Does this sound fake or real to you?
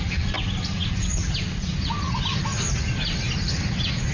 real